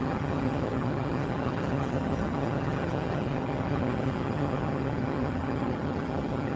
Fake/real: fake